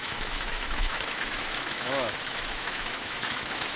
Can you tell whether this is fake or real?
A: fake